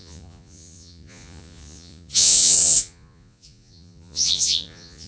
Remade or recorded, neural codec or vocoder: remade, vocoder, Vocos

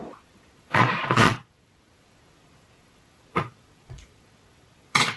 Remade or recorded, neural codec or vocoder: remade, vocoder, Vocos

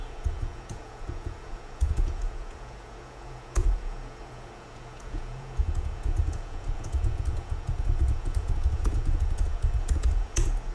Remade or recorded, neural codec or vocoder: remade, vocoder, Vocos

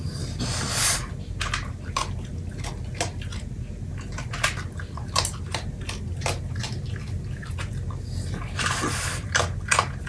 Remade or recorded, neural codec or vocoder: recorded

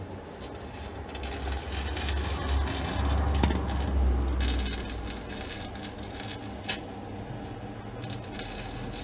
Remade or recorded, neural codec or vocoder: recorded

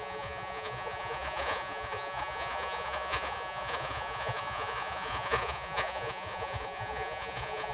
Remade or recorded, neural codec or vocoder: remade, vocoder, Vocos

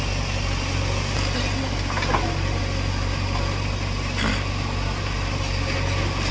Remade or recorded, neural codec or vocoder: recorded